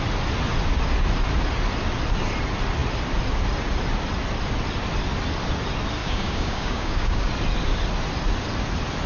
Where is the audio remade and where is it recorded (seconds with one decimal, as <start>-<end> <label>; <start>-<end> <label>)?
0.0-6.0 recorded; 6.0-7.3 remade; 7.3-9.1 recorded